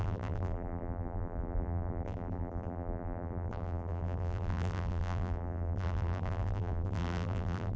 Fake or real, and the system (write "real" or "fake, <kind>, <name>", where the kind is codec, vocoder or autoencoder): fake, vocoder, BigVGAN v2